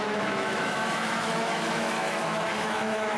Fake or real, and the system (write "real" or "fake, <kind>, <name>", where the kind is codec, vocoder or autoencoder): fake, autoencoder, DAC-VAE